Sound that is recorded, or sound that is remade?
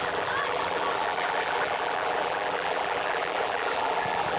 remade